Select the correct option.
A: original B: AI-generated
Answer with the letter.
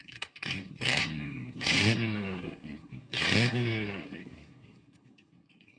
B